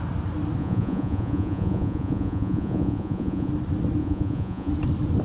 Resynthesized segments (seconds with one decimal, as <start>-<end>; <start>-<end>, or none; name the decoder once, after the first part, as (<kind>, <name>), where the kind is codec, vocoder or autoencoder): 0.6-3.5 (vocoder, Vocos); 4.0-4.7